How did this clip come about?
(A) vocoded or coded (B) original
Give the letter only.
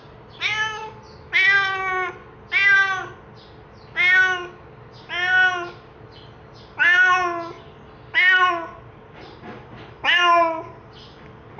B